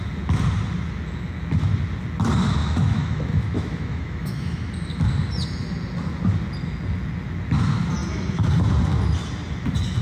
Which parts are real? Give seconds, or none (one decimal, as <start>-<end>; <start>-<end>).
0.0-2.6; 4.7-10.0